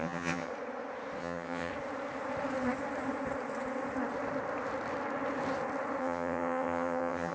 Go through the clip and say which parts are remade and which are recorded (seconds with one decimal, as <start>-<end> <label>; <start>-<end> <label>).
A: 0.0-0.5 remade; 0.5-1.2 recorded; 1.2-1.7 remade; 1.7-6.0 recorded; 6.0-7.3 remade